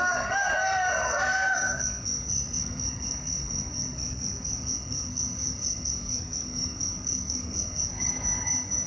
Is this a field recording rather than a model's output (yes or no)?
no